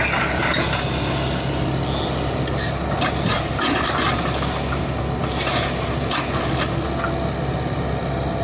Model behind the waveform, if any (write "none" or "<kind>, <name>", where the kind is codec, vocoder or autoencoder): none